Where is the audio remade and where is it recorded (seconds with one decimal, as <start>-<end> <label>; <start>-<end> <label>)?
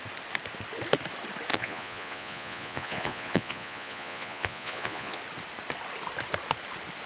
0.0-1.5 recorded; 1.5-5.2 remade; 5.2-7.1 recorded